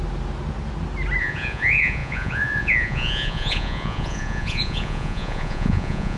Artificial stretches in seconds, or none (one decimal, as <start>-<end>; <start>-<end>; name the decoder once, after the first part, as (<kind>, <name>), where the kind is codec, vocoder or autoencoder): 1.2-6.2 (vocoder, Vocos)